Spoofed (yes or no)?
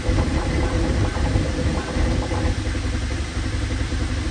no